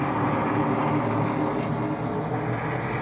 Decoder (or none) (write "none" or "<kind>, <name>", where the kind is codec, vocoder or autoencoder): none